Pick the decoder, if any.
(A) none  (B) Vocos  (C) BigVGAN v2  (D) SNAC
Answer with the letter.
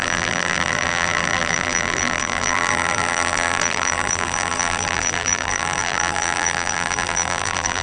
C